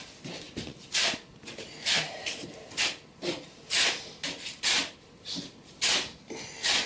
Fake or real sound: real